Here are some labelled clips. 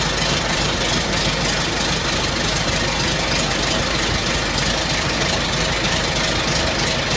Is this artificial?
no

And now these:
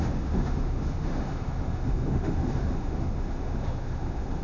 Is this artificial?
yes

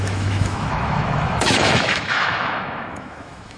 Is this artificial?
yes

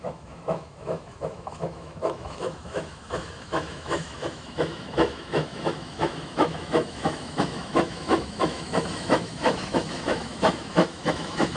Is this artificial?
yes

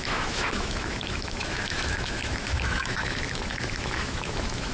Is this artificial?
yes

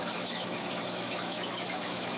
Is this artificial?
yes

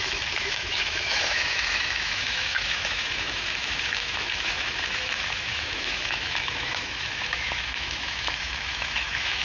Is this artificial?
yes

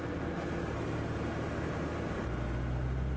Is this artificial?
no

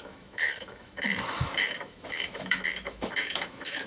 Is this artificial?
yes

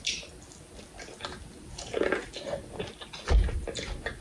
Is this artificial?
no